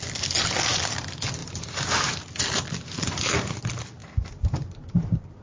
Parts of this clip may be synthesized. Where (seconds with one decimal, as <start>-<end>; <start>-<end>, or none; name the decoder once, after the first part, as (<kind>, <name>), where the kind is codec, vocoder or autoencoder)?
1.4-2.4 (vocoder, BigVGAN v2); 4.0-5.4